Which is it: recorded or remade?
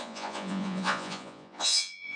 remade